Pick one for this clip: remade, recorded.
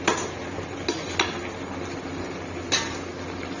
recorded